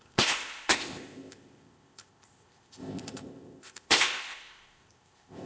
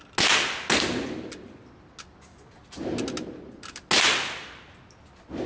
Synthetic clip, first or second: first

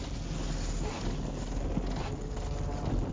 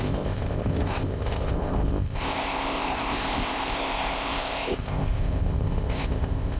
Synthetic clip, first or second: second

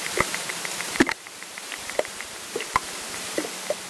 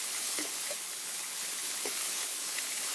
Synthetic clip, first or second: second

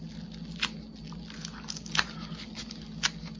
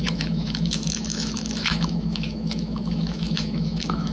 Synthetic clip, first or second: second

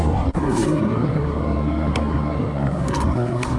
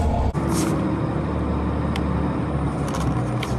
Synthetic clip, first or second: first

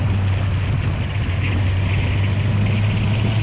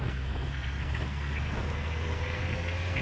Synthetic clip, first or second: second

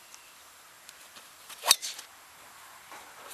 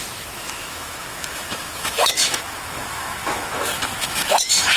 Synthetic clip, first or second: second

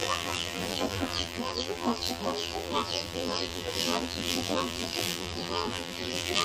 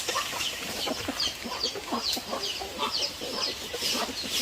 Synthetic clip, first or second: first